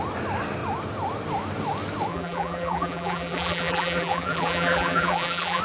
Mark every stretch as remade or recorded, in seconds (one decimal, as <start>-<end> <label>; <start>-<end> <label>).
0.0-2.1 recorded; 2.1-5.6 remade